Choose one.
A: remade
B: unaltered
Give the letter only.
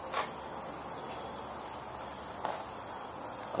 B